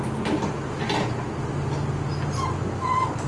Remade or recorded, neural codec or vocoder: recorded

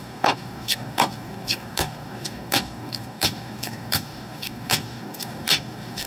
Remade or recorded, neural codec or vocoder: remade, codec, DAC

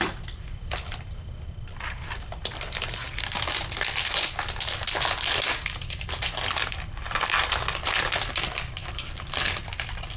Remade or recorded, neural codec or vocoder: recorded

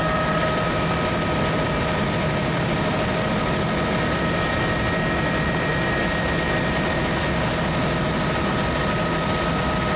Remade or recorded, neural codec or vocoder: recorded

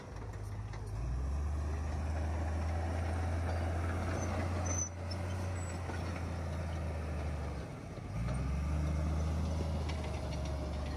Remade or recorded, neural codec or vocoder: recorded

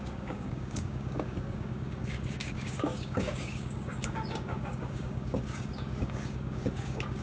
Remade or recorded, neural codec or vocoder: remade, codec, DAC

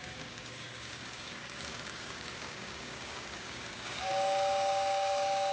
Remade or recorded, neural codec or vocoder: remade, codec, DAC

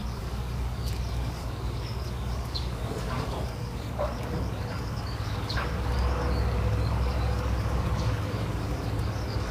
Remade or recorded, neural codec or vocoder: remade, codec, DAC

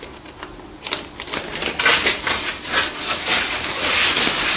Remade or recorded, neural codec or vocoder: recorded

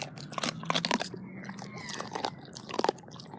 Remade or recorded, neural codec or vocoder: recorded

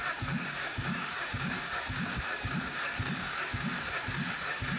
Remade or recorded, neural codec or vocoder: remade, codec, DAC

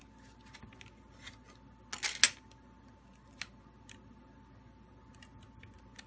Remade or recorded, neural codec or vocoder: recorded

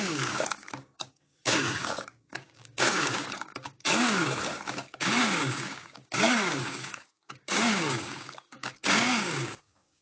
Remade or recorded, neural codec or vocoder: remade, codec, DAC